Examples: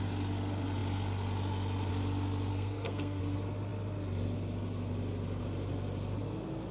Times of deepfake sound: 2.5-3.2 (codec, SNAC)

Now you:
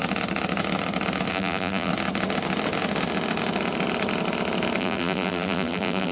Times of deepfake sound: 1.3-1.9 (vocoder, BigVGAN v2); 4.8-6.1

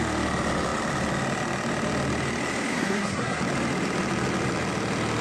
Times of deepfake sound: 2.7-3.4 (codec, SNAC)

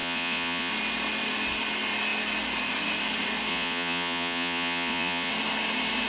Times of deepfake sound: 0.0-0.7 (vocoder, Vocos); 3.5-5.3

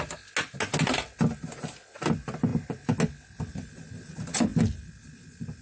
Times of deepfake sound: none